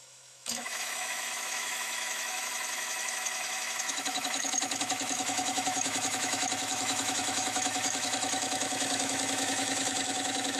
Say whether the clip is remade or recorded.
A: remade